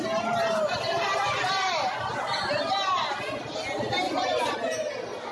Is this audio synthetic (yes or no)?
no